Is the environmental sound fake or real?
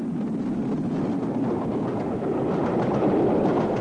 real